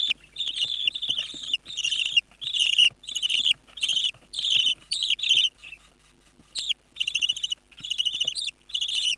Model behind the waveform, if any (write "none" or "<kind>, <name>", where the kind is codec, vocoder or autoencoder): none